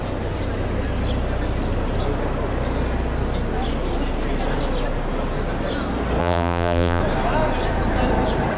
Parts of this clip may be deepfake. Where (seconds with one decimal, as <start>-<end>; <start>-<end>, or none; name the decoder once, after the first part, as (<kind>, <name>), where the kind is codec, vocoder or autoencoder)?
6.2-7.0 (vocoder, BigVGAN v2)